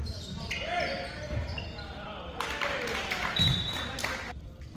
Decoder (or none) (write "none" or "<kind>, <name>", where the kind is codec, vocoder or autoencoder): none